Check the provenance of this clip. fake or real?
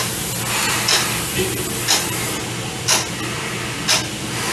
real